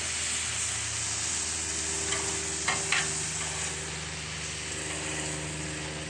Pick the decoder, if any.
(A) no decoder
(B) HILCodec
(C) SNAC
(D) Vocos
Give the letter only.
A